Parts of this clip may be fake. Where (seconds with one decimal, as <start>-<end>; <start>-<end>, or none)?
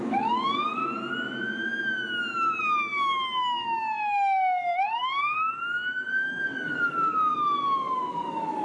0.0-0.8; 2.6-8.6